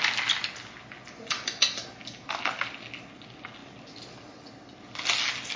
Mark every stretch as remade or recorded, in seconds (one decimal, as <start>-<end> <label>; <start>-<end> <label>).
0.0-5.6 recorded